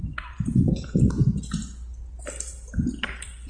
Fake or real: real